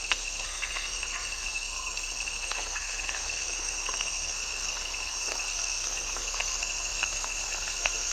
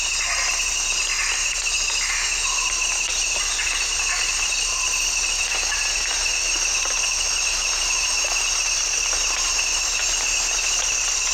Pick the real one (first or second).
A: second